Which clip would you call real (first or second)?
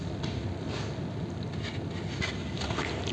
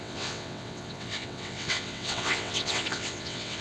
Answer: first